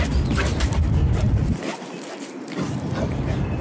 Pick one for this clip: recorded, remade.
remade